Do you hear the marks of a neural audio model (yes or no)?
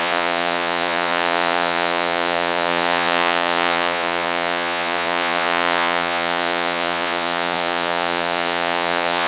yes